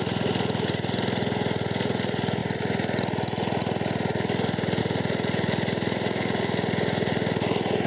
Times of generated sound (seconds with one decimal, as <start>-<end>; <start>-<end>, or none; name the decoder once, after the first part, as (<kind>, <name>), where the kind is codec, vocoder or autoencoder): none